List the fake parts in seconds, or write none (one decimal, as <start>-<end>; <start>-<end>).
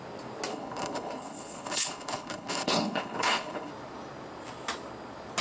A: 0.5-3.7